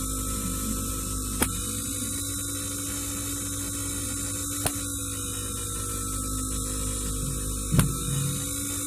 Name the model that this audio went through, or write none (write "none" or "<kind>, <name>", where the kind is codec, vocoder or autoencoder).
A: none